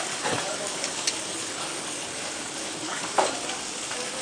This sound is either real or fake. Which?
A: fake